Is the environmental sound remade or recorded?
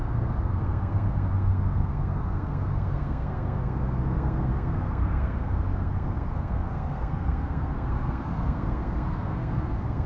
remade